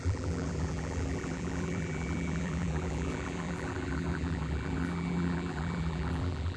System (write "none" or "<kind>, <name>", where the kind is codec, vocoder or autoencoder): vocoder, BigVGAN v2